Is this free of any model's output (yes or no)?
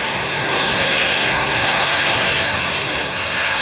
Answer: no